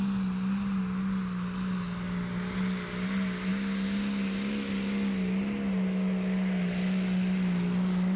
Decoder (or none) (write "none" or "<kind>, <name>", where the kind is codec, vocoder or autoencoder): none